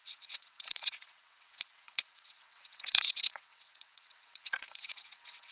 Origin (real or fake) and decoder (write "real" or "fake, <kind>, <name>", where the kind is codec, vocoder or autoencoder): fake, vocoder, WaveNeXt